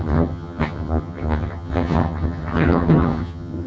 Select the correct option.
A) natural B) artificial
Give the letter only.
B